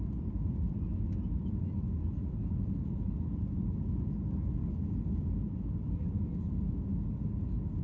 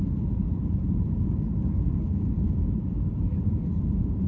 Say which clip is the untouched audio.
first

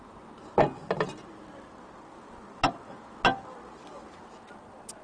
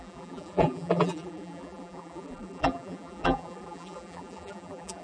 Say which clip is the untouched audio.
first